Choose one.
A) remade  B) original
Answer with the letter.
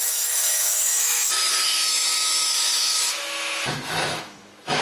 A